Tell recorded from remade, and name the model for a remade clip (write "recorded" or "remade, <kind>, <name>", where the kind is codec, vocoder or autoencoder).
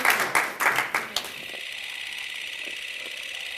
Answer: recorded